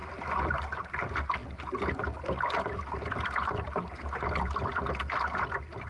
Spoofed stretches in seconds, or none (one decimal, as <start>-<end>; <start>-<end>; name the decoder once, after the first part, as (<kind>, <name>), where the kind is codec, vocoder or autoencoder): none